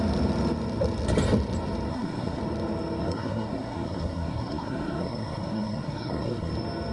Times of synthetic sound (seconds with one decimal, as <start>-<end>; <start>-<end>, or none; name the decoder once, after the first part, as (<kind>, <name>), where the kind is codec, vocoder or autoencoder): 1.9-2.4 (codec, SNAC); 3.0-6.5